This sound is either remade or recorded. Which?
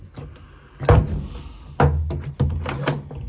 recorded